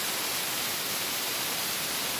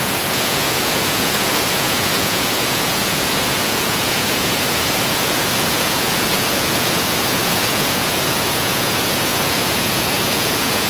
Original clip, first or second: first